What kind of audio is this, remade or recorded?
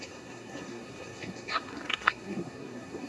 remade